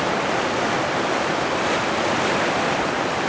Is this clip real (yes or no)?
no